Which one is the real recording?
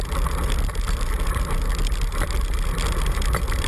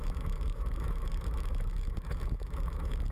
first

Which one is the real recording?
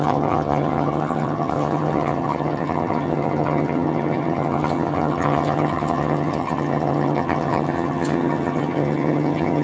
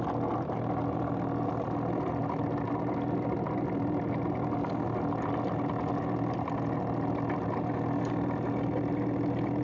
second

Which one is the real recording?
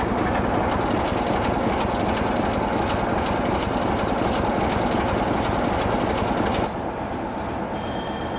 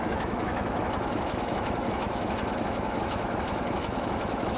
first